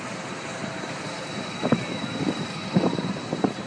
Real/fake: real